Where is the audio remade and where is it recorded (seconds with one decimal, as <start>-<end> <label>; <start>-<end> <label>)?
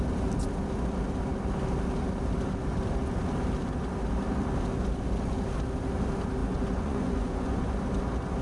0.0-6.4 recorded; 6.4-7.8 remade; 7.8-8.4 recorded